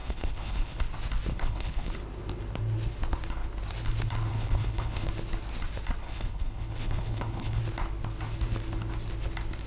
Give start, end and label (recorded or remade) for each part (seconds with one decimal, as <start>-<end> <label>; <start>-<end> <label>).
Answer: 0.0-0.8 remade; 0.8-1.3 recorded; 1.3-1.9 remade; 1.9-4.3 recorded; 4.3-5.1 remade; 5.1-6.0 recorded; 6.0-7.6 remade; 7.6-9.7 recorded